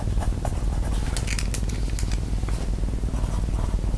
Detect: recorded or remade recorded